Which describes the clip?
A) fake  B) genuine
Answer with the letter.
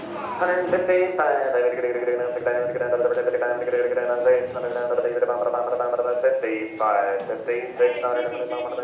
B